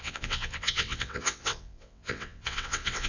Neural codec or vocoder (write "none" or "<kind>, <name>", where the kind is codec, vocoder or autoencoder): vocoder, WaveNeXt